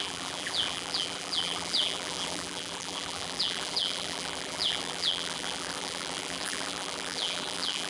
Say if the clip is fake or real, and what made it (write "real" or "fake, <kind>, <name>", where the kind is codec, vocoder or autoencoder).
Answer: fake, vocoder, BigVGAN v2